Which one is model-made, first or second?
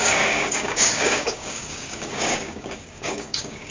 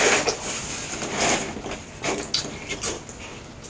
first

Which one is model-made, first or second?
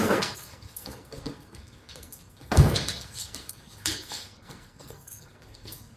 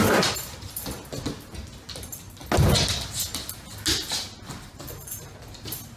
first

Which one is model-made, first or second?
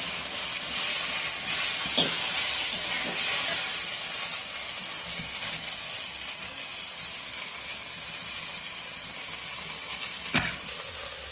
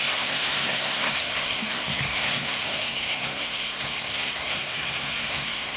second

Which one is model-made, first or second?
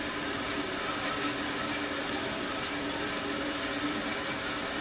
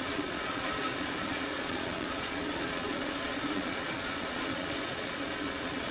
second